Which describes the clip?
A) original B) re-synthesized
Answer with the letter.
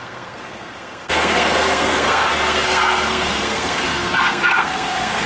B